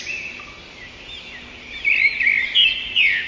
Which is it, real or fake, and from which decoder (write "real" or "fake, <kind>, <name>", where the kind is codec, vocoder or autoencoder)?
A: real